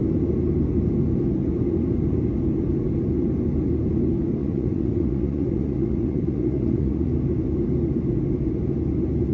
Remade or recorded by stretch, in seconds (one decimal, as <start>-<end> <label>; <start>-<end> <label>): 0.0-4.4 recorded; 4.4-7.1 remade; 7.1-9.3 recorded